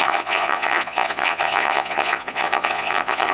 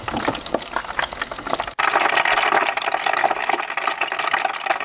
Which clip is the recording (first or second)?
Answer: second